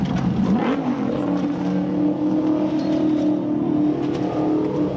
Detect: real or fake real